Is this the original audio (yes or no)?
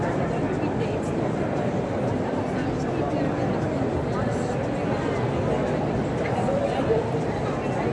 yes